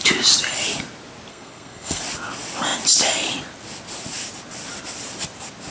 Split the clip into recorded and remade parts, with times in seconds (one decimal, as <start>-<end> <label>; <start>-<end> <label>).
0.0-1.3 recorded; 1.3-2.0 remade; 2.0-5.7 recorded

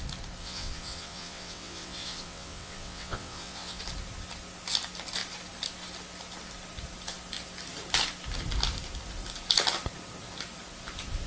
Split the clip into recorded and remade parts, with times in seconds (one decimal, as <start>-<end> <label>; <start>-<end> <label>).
0.0-0.4 recorded; 0.4-3.8 remade; 3.8-11.3 recorded